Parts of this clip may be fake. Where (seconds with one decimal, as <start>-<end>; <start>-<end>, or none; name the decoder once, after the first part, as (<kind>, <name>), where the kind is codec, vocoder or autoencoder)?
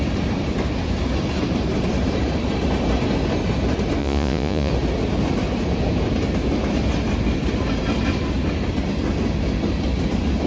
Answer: 4.0-4.7 (vocoder, Vocos)